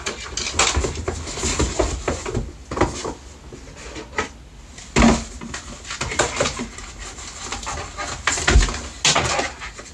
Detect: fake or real real